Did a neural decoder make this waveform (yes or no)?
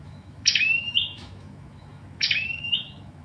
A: yes